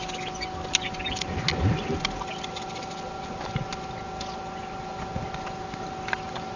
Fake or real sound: real